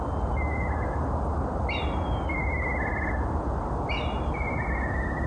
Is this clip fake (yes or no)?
no